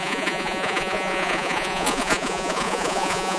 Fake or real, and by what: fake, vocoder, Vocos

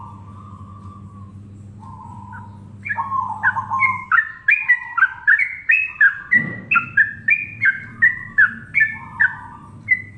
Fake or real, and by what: real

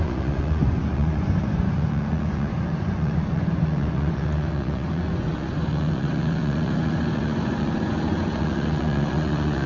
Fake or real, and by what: fake, vocoder, Vocos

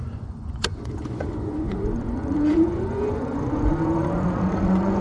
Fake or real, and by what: fake, vocoder, Vocos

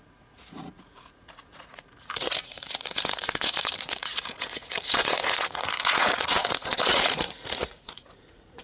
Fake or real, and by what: fake, vocoder, Vocos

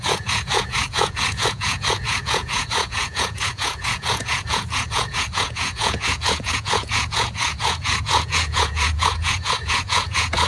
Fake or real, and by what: fake, vocoder, Vocos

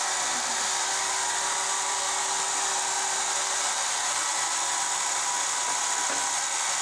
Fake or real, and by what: real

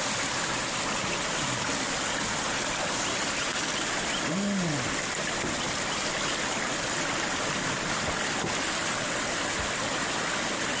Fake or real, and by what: real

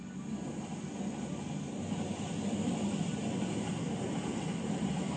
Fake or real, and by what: real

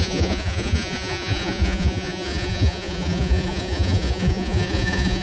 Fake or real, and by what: fake, vocoder, Vocos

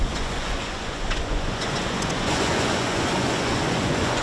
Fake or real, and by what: fake, vocoder, Vocos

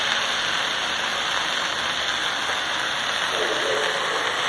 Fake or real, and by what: real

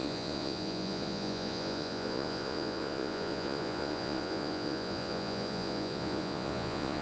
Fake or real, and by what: fake, vocoder, Vocos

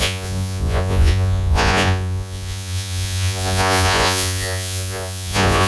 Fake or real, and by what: fake, vocoder, Vocos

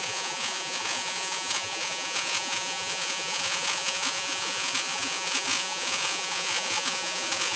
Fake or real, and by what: fake, vocoder, Vocos